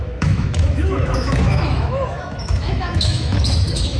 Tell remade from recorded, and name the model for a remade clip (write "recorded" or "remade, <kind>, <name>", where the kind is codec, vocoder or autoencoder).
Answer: remade, autoencoder, DAC-VAE